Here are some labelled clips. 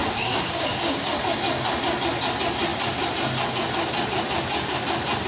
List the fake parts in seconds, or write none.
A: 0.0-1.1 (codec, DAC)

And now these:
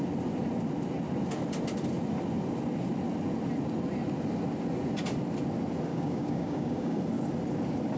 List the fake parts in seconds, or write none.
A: 5.9-7.0 (codec, DAC)

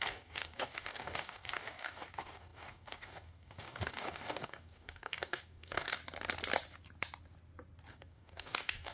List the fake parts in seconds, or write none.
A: 0.0-6.0 (codec, DAC); 7.9-8.9

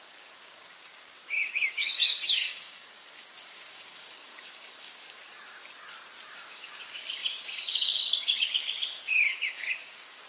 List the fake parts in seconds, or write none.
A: 0.0-5.3 (codec, DAC); 6.3-10.3

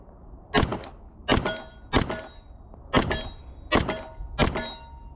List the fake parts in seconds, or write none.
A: none

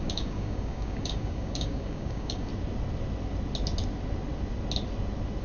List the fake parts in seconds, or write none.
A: 0.0-2.5 (codec, DAC)

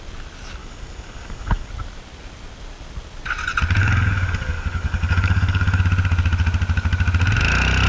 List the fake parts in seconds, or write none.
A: 0.6-1.7 (codec, DAC); 3.8-5.8

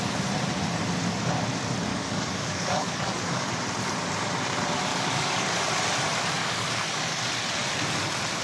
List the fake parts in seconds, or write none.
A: 1.9-3.5 (codec, DAC); 4.9-5.5; 6.4-7.2